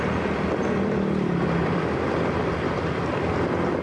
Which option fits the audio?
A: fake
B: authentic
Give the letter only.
A